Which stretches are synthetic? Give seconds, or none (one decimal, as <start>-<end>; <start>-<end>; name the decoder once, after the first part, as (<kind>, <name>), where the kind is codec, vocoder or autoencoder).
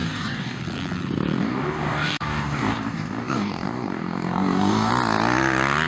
0.0-0.6 (codec, DAC); 1.4-4.9